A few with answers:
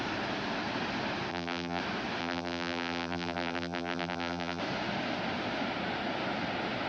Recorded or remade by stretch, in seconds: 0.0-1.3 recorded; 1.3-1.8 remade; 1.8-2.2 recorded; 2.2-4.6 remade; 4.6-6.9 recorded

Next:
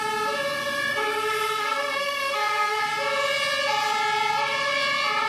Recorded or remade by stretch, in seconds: 0.0-0.9 recorded; 0.9-2.8 remade; 2.8-5.3 recorded

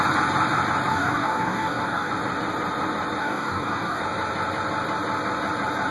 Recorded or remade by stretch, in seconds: 0.0-0.9 recorded; 0.9-2.1 remade; 2.1-3.2 recorded; 3.2-4.0 remade; 4.0-5.9 recorded

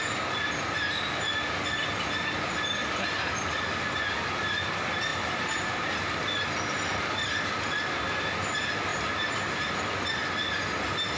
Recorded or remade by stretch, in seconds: 0.0-2.8 recorded; 2.8-3.7 remade; 3.7-5.1 recorded; 5.1-5.9 remade; 5.9-8.9 recorded; 8.9-9.6 remade; 9.6-11.2 recorded

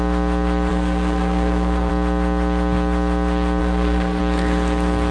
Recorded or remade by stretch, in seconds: 0.0-0.7 recorded; 0.7-1.9 remade; 1.9-3.6 recorded; 3.6-4.2 remade; 4.2-5.1 recorded